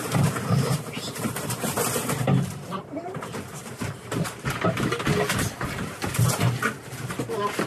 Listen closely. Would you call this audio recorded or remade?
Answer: recorded